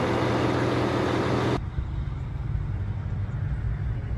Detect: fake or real real